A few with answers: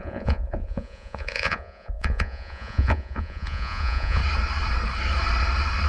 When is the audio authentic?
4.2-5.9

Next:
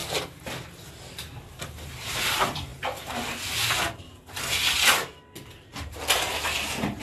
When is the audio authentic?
0.0-0.9; 2.7-7.0

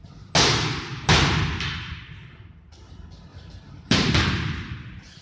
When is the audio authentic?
0.0-3.3; 4.1-5.2

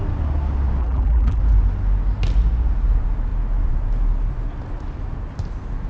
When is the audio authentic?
0.0-0.8; 1.4-5.9